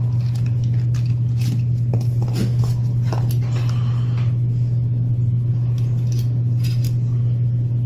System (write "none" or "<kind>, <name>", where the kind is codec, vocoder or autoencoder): none